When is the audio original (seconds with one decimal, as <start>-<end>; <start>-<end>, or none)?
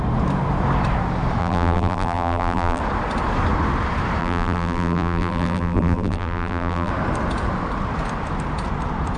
0.0-1.4; 2.8-4.2; 6.9-9.2